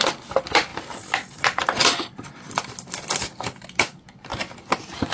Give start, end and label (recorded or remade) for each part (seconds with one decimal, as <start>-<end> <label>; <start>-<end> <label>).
0.0-5.1 recorded